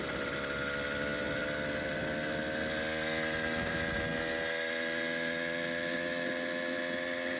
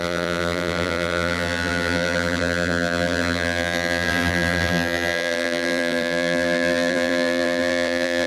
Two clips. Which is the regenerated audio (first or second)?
second